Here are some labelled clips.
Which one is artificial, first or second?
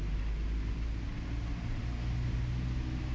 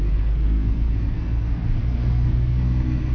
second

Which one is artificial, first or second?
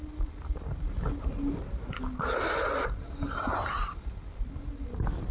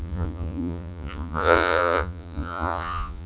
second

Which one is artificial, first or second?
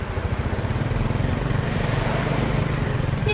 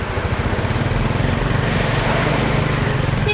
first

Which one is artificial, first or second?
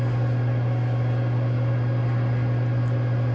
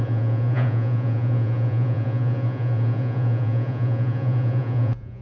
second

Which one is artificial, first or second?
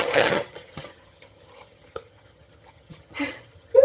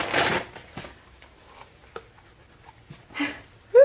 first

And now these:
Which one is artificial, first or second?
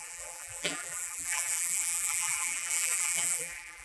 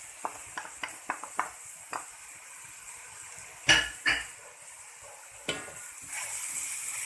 first